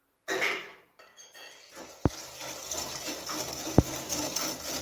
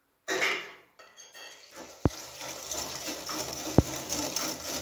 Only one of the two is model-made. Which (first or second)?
second